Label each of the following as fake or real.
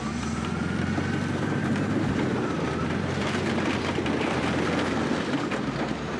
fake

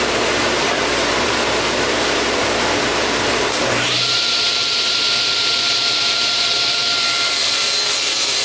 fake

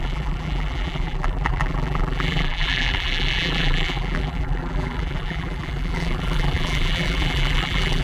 fake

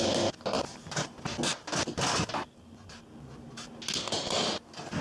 real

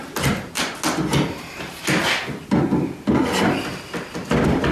real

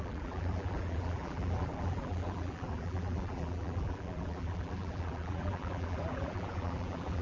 fake